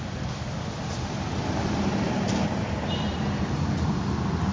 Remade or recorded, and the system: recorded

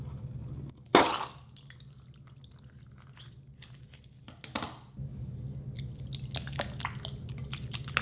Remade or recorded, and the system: recorded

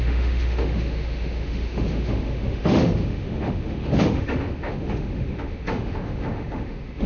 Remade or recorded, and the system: remade, autoencoder, DAC-VAE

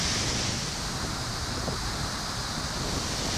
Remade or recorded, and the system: recorded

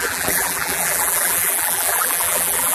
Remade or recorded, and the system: remade, vocoder, BigVGAN v2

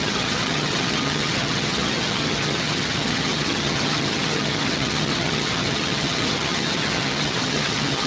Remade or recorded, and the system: remade, vocoder, HiFi-GAN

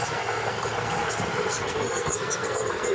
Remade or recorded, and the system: remade, codec, SNAC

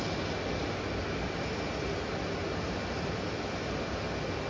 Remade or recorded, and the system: recorded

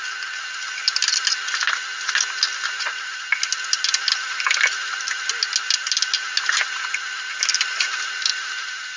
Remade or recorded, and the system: recorded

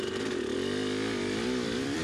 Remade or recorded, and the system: remade, vocoder, BigVGAN v2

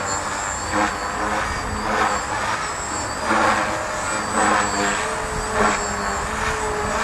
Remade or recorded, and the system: recorded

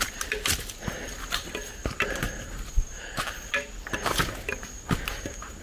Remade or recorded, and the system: recorded